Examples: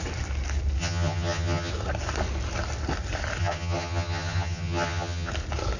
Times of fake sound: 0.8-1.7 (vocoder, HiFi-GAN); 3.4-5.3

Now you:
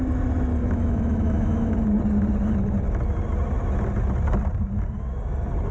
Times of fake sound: 0.6-1.8 (autoencoder, DAC-VAE)

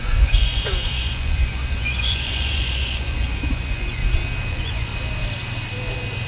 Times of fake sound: 0.0-4.0 (vocoder, Vocos); 4.5-4.9